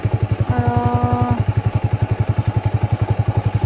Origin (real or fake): real